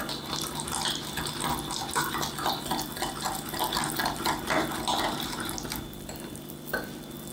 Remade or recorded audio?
recorded